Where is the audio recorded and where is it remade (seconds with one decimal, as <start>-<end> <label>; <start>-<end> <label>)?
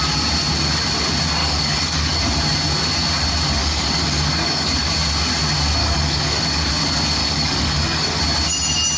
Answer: 0.0-1.4 recorded; 1.4-2.2 remade; 2.2-3.6 recorded; 3.6-4.9 remade; 4.9-5.8 recorded; 5.8-6.7 remade; 6.7-7.2 recorded; 7.2-8.2 remade; 8.2-9.0 recorded